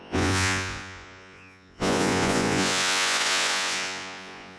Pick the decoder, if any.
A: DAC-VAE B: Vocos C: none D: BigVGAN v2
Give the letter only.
B